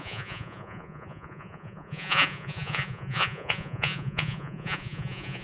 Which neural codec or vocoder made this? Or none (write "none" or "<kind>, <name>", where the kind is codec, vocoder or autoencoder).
vocoder, Vocos